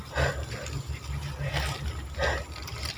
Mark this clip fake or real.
real